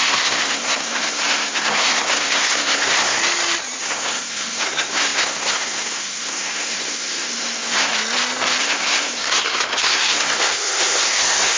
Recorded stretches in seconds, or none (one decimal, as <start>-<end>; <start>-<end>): 3.2-3.8; 7.9-8.6